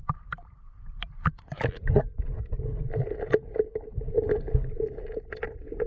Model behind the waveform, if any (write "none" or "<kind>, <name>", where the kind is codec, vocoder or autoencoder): vocoder, BigVGAN v2